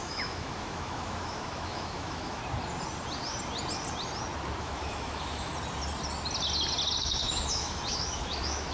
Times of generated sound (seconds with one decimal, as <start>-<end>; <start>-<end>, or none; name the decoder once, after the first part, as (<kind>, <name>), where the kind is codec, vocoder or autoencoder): 0.0-2.4 (autoencoder, DAC-VAE); 4.6-5.5; 7.0-8.7